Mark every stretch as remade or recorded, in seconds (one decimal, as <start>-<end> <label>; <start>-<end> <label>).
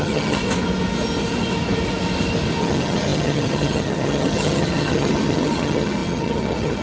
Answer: 0.0-0.4 remade; 0.4-2.6 recorded; 2.6-6.8 remade